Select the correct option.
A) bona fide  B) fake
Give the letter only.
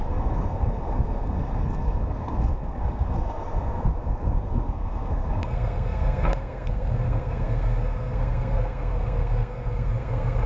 B